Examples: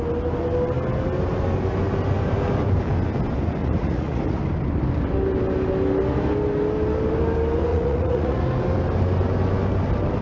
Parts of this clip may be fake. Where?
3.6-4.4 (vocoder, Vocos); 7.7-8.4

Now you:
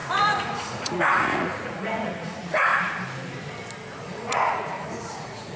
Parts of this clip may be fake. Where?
0.0-2.7 (vocoder, Vocos); 4.0-5.6

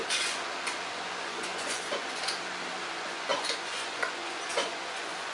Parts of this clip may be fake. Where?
0.0-5.3 (vocoder, Vocos)

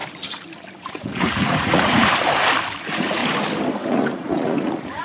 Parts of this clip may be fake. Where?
0.8-2.0 (vocoder, Vocos); 2.8-3.2; 3.9-5.0